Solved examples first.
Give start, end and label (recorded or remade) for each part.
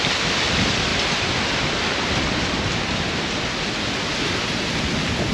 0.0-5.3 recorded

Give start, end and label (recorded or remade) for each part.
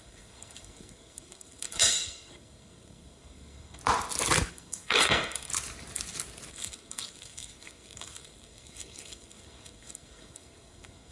0.0-3.8 remade; 3.8-4.5 recorded; 4.5-5.5 remade; 5.5-6.5 recorded; 6.5-11.1 remade